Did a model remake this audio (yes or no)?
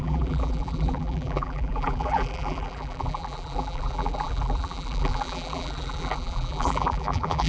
yes